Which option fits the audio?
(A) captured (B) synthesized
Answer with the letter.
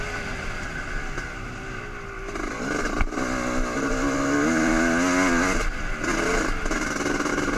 A